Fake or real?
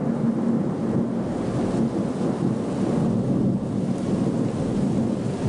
real